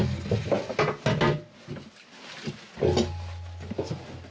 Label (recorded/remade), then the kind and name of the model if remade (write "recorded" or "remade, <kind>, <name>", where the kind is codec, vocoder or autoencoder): recorded